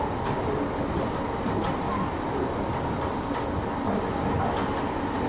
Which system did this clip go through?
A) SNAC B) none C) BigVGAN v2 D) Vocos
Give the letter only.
C